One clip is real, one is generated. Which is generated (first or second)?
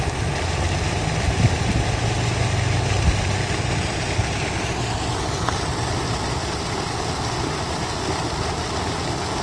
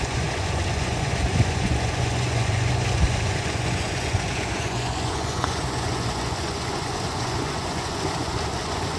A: second